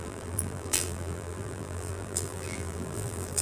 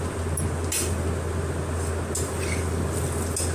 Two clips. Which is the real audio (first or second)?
second